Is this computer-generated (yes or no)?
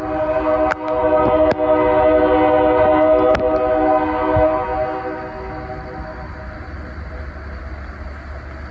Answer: no